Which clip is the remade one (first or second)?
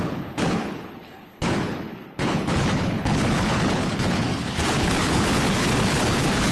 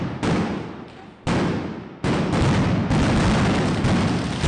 first